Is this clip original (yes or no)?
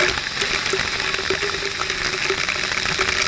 yes